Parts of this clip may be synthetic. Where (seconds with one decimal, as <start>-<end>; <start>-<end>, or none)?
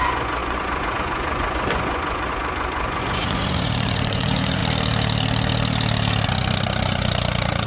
0.0-4.6